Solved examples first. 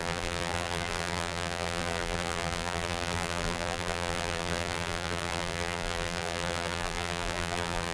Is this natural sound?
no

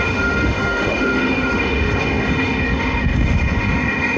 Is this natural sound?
no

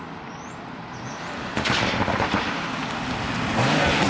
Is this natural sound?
yes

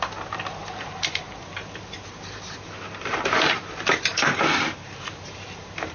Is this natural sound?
no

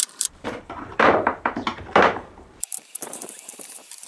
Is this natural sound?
no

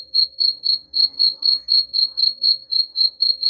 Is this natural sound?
no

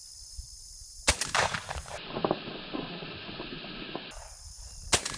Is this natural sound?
yes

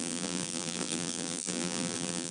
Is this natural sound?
no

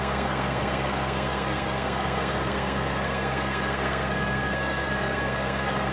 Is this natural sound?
no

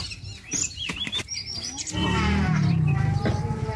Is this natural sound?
yes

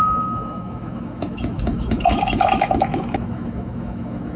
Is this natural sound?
no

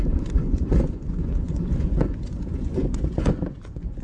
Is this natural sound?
no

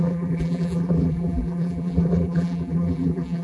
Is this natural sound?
no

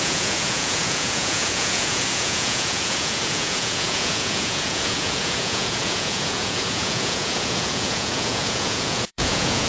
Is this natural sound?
no